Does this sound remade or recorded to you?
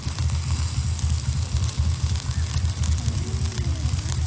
remade